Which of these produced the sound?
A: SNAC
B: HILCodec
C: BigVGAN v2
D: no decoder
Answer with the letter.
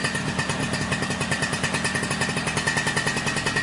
D